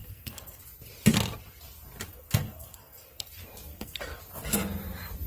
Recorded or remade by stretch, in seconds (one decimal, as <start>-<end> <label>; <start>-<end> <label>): 0.0-0.6 remade; 0.6-2.1 recorded; 2.1-3.3 remade; 3.3-3.7 recorded; 3.7-4.2 remade; 4.2-5.3 recorded